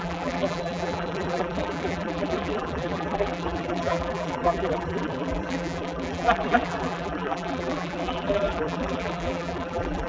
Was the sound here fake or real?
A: fake